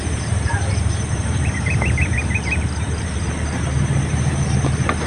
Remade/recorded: remade